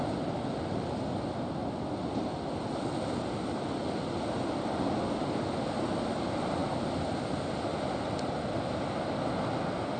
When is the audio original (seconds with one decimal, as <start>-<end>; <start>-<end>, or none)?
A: 0.0-10.0